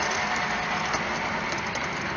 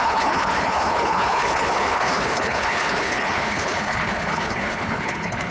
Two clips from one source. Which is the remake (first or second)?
second